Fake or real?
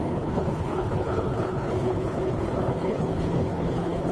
fake